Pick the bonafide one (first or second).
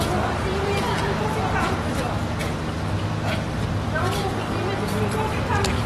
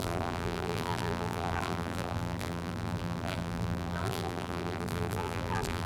first